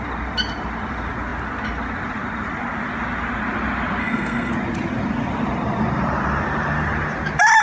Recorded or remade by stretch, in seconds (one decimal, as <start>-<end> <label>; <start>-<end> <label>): 0.0-4.0 recorded; 4.0-4.5 remade; 4.5-7.6 recorded